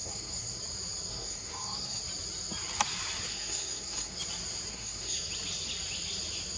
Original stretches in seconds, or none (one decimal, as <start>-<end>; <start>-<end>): 0.6-1.1; 2.0-3.3; 4.2-4.7; 5.3-6.6